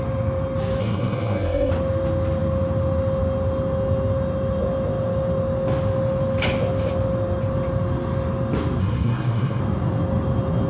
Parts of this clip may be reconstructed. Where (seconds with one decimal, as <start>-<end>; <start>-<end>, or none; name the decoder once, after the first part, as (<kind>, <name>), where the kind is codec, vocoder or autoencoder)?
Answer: 0.8-1.7 (codec, SNAC); 8.8-9.6